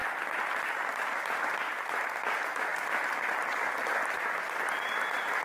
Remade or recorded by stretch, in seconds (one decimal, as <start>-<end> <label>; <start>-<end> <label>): 0.0-5.4 recorded